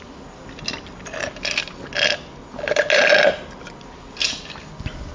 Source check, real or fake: real